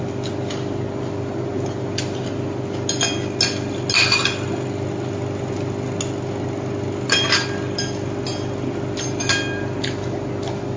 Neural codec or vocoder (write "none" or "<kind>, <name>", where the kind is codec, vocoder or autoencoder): none